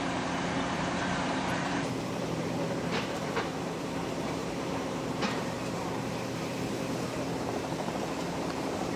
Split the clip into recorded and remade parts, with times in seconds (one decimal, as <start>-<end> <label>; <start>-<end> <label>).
0.0-9.0 remade